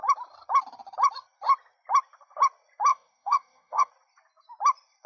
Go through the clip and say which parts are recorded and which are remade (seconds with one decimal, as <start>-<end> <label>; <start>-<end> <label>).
0.0-2.9 recorded; 2.9-3.9 remade; 3.9-5.1 recorded